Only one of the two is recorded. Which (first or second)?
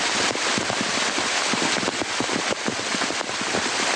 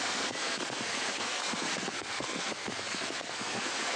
first